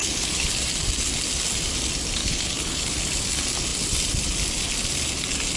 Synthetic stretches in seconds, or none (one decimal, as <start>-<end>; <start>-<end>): 0.0-0.5; 2.2-3.0